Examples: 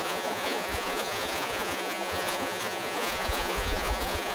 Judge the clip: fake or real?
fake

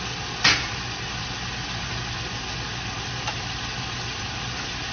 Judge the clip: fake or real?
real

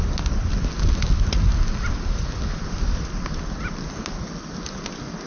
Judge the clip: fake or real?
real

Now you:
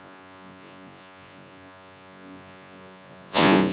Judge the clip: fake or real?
fake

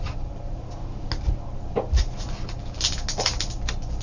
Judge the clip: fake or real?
real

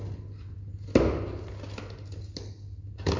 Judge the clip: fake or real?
real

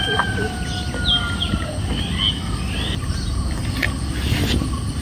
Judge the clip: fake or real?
real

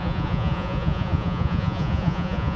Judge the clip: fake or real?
fake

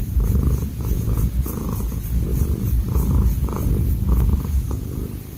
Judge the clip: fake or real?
fake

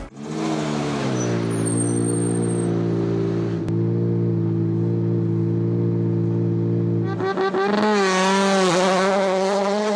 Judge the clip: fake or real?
real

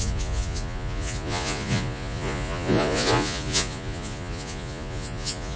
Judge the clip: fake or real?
fake